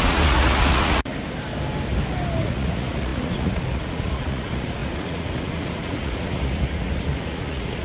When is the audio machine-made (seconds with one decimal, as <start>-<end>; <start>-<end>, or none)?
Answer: 0.0-1.1; 2.4-7.8